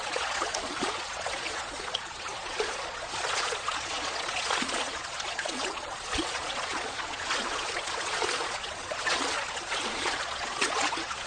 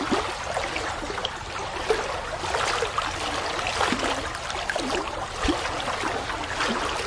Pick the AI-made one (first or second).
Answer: first